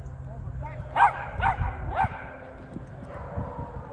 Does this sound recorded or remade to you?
recorded